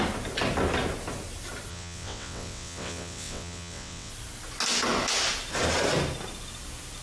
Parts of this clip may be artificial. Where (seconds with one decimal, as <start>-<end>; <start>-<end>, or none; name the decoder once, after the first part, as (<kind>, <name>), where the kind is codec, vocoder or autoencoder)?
1.7-4.1 (vocoder, WaveNeXt)

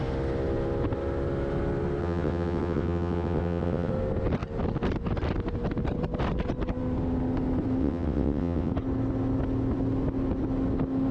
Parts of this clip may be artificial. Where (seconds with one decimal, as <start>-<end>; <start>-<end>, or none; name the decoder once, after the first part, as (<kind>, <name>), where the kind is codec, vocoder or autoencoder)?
2.0-3.9 (vocoder, WaveNeXt); 7.8-8.7

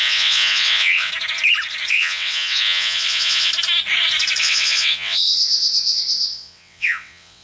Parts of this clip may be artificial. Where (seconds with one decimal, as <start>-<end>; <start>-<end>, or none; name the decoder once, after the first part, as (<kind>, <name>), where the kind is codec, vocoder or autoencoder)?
0.0-1.1 (vocoder, WaveNeXt); 1.9-3.5; 4.4-7.4

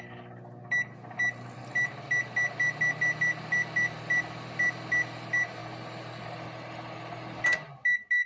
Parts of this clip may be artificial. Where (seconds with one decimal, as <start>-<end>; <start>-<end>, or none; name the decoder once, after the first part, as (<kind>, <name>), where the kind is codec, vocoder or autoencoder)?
none